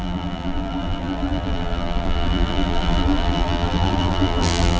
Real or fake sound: fake